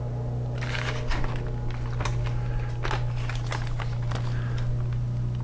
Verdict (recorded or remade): recorded